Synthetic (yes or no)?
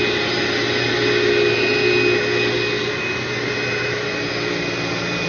no